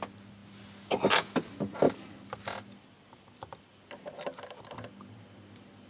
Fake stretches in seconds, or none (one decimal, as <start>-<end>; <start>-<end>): none